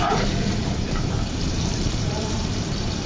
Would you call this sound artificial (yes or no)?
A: yes